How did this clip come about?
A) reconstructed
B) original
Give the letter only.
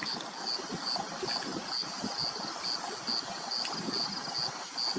B